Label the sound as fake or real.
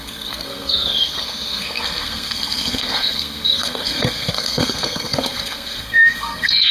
fake